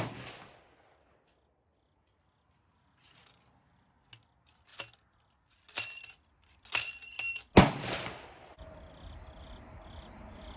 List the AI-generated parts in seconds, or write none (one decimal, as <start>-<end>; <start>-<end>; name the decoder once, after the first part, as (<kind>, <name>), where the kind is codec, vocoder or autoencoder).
none